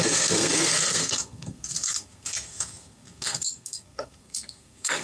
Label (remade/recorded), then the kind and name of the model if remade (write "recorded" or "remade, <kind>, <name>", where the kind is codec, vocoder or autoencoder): remade, codec, SNAC